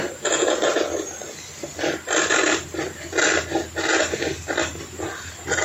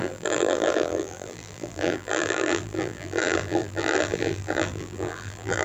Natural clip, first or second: first